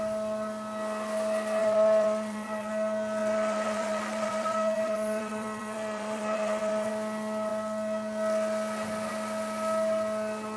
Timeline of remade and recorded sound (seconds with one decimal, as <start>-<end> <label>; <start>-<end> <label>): 0.0-1.6 recorded; 1.6-2.7 remade; 2.7-3.2 recorded; 3.2-6.9 remade; 6.9-10.6 recorded